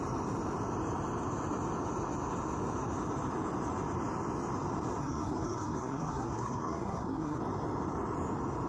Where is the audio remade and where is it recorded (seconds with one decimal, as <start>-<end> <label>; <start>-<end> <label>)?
0.0-5.0 recorded; 5.0-7.4 remade; 7.4-8.7 recorded